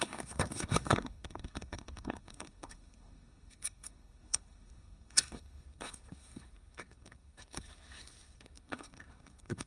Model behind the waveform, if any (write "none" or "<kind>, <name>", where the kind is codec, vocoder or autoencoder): codec, SNAC